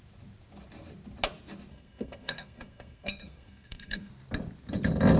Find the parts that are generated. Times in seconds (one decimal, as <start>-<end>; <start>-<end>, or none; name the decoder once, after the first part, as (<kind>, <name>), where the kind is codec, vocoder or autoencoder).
1.7-4.1 (codec, SNAC)